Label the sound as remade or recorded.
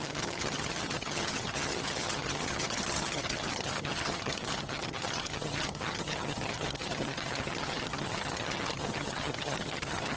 remade